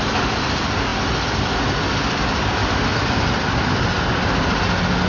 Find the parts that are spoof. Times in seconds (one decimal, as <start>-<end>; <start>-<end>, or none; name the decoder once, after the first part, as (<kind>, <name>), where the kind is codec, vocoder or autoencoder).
none